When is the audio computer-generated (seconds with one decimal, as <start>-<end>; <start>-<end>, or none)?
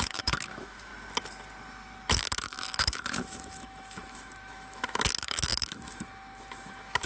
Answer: 0.0-0.9; 2.1-7.1